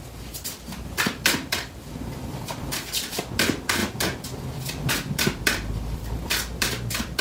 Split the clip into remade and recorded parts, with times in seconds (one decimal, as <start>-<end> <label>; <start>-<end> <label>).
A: 0.0-3.8 remade; 3.8-4.9 recorded; 4.9-7.2 remade